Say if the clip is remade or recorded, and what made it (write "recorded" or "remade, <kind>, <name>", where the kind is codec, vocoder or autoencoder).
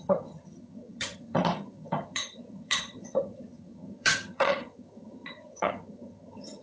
remade, vocoder, HiFi-GAN